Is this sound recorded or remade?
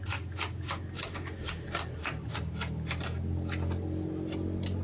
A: recorded